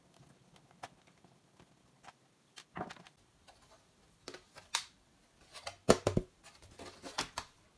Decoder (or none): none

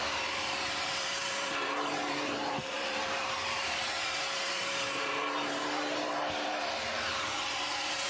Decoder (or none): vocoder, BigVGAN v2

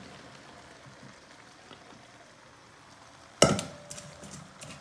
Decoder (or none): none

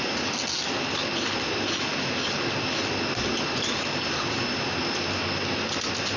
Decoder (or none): none